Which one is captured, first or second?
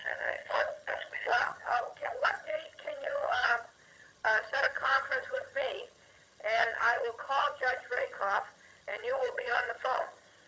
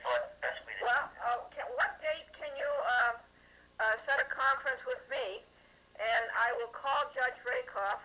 second